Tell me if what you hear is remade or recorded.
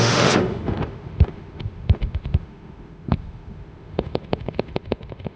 remade